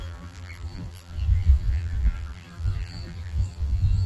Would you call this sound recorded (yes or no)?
no